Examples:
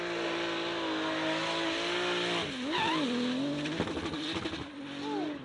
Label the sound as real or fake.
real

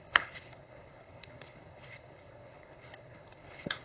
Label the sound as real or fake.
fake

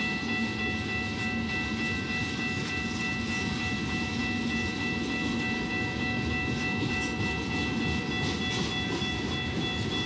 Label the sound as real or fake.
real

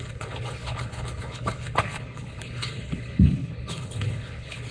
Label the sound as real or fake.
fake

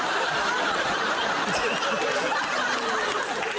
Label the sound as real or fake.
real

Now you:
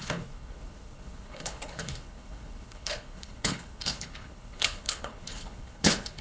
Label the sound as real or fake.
fake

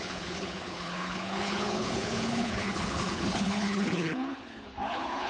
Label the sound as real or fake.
fake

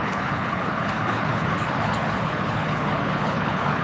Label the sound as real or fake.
fake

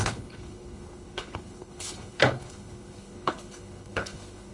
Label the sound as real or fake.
fake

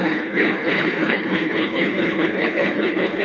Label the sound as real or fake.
fake